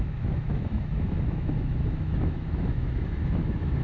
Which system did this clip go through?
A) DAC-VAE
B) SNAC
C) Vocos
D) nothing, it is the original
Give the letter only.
A